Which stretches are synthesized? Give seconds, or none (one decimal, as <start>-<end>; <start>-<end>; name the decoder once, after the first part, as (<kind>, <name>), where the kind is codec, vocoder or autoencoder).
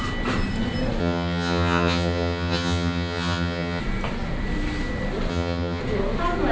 1.0-3.8 (vocoder, HiFi-GAN); 5.3-5.8